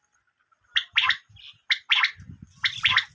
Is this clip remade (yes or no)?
no